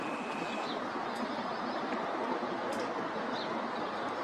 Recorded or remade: recorded